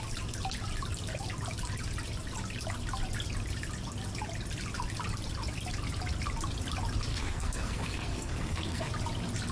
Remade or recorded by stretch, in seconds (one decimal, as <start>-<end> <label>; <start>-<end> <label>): 0.0-7.1 recorded; 7.1-8.9 remade; 8.9-9.5 recorded